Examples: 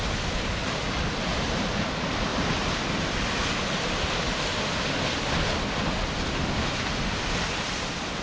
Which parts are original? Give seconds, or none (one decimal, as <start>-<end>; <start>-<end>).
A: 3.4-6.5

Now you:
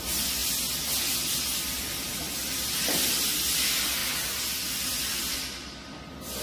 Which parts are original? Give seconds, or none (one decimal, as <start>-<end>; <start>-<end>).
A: 0.0-6.4

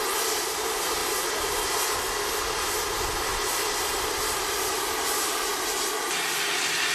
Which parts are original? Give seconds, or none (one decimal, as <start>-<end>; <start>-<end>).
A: 0.0-6.9

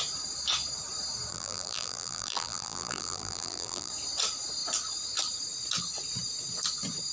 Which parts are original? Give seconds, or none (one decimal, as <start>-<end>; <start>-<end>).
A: 0.0-1.3; 3.9-7.1